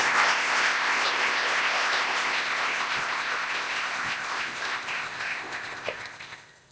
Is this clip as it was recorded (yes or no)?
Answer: no